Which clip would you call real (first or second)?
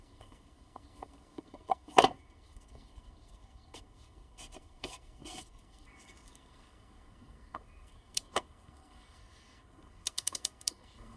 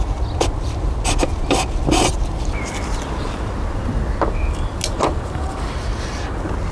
second